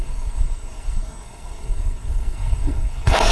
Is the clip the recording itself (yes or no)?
no